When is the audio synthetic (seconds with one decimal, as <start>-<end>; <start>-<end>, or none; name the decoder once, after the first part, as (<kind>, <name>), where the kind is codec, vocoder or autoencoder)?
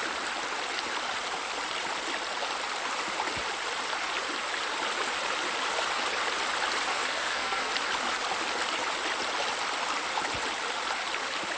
6.9-7.7 (codec, SNAC)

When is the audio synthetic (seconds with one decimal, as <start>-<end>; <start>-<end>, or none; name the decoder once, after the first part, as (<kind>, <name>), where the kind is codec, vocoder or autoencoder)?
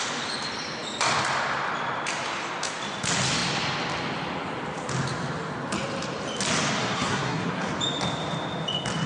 6.8-7.7 (codec, SNAC)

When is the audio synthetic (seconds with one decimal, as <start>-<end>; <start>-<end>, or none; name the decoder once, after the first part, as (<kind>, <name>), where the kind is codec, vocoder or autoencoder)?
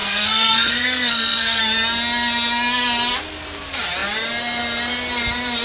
0.0-1.6 (codec, SNAC)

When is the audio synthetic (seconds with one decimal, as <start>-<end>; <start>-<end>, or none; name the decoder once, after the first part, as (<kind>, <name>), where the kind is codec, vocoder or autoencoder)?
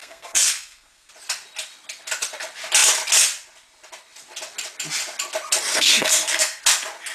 0.0-1.1 (codec, SNAC); 5.7-6.6